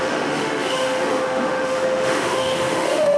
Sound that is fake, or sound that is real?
fake